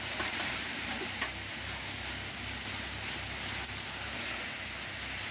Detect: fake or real real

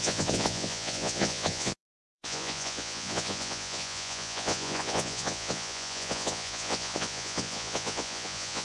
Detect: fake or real fake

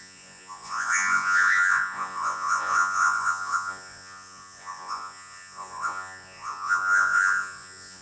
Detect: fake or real fake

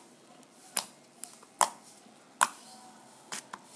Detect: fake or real real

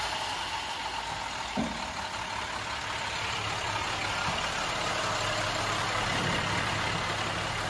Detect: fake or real real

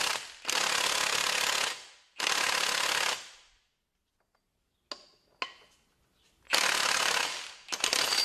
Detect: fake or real real